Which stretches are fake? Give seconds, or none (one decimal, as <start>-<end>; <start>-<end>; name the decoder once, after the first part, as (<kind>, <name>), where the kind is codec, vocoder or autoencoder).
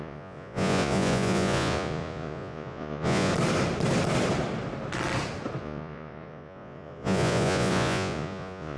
0.0-3.3 (vocoder, Vocos); 5.6-8.8